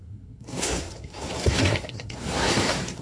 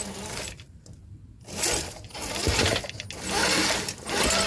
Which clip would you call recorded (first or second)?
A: second